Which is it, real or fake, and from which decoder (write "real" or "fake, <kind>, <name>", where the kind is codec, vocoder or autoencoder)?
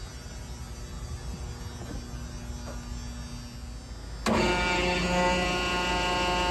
real